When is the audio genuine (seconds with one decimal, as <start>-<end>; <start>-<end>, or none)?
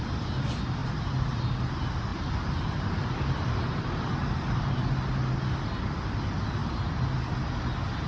0.0-0.8; 1.4-2.1; 3.9-6.6; 7.1-8.1